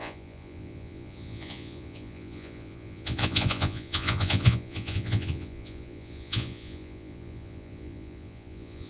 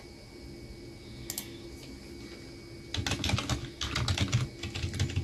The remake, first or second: first